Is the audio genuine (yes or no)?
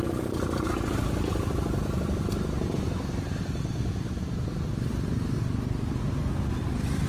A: yes